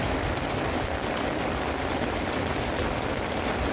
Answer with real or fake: real